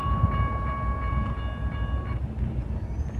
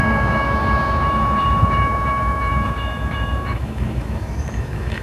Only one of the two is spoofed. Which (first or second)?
second